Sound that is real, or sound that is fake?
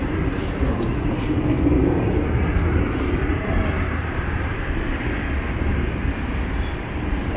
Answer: fake